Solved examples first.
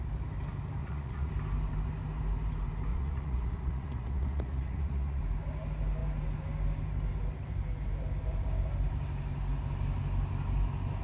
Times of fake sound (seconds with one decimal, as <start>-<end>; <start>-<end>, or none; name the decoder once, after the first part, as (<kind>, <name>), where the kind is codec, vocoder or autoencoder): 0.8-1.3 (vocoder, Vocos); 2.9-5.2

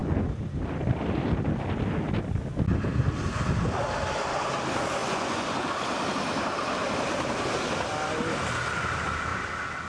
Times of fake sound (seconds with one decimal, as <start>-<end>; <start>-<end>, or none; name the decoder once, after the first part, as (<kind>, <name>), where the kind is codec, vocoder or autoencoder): 5.0-5.5 (vocoder, Vocos)

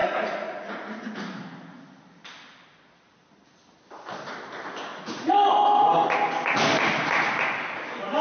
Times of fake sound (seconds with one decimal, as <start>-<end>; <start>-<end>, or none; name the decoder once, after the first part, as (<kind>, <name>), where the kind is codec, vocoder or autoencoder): 0.0-1.2 (vocoder, Vocos); 4.9-5.5